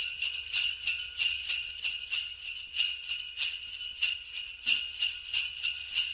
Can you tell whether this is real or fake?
fake